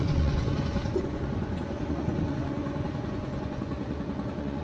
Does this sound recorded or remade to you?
remade